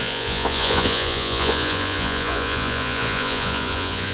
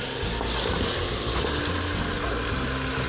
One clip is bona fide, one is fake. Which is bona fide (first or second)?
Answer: second